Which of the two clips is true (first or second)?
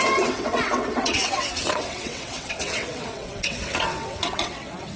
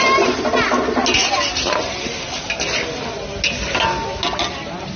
second